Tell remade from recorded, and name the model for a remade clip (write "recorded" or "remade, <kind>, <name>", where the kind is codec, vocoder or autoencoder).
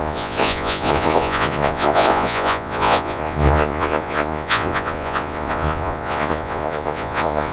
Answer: remade, vocoder, Vocos